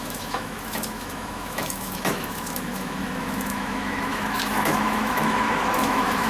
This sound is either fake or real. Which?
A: fake